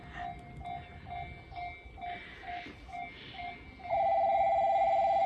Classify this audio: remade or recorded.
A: recorded